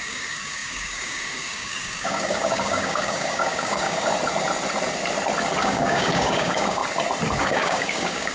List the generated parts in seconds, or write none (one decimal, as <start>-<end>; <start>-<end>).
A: 0.0-4.1; 5.6-6.8; 7.4-8.3